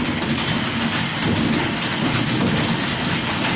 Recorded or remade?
recorded